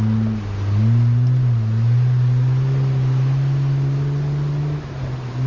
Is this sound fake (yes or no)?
no